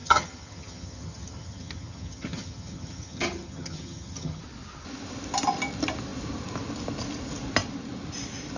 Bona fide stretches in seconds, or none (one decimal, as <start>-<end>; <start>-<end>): 4.4-8.6